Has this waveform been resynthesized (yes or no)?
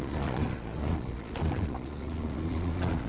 yes